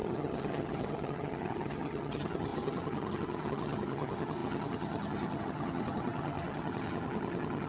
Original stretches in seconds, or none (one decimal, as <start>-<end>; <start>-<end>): none